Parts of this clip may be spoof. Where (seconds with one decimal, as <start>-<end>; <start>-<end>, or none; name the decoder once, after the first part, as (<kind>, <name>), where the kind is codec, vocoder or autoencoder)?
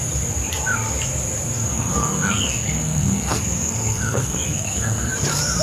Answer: 1.7-5.1 (codec, SNAC)